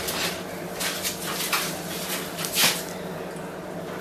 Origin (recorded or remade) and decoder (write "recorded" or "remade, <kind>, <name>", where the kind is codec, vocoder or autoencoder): recorded